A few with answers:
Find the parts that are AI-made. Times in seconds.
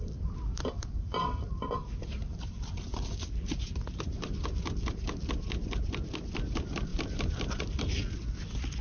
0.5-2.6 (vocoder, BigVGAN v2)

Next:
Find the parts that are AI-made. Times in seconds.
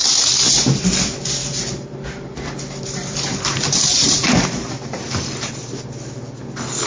0.5-6.9 (vocoder, BigVGAN v2)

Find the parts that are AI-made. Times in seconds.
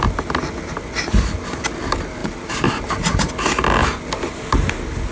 2.2-3.3 (vocoder, BigVGAN v2)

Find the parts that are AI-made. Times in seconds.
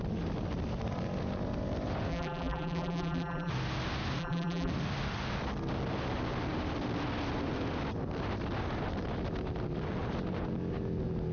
2.1-3.5 (vocoder, BigVGAN v2); 4.2-4.7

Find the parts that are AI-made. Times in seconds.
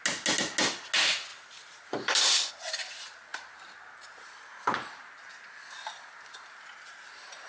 1.3-2.5 (vocoder, BigVGAN v2)